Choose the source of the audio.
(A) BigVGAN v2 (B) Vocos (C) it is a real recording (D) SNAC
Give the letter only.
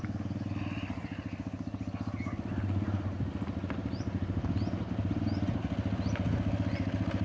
C